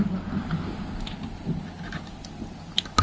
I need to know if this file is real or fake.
real